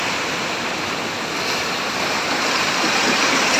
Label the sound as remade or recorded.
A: recorded